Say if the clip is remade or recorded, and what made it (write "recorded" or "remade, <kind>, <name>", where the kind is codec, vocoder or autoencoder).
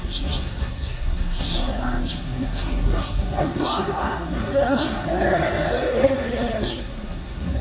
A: remade, codec, SNAC